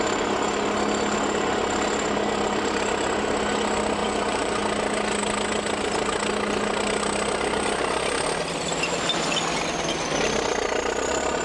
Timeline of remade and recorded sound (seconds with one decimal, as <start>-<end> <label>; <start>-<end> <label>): 0.0-4.0 recorded; 4.0-4.6 remade; 4.6-11.4 recorded